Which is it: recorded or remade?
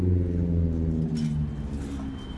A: recorded